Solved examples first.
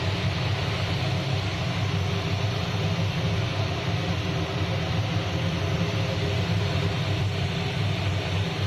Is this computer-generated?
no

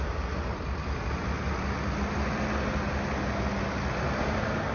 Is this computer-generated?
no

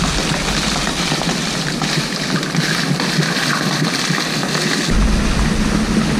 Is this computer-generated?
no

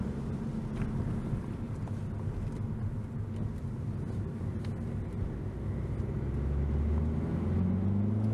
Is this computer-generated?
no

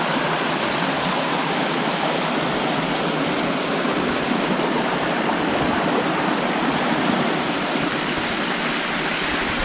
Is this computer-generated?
no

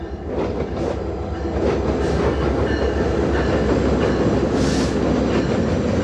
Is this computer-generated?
no